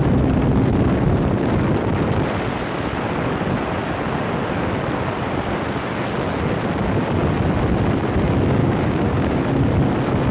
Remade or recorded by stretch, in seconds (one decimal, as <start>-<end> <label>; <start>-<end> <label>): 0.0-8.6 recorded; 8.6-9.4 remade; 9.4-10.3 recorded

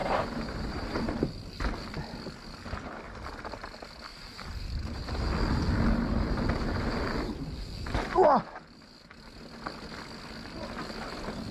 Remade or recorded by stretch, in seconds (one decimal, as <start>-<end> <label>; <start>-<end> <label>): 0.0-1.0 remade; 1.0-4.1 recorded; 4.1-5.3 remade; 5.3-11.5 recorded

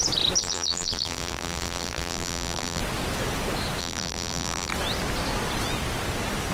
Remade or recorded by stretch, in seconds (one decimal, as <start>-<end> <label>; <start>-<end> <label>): 0.0-0.4 recorded; 0.4-2.8 remade; 2.8-3.8 recorded; 3.8-4.7 remade; 4.7-6.5 recorded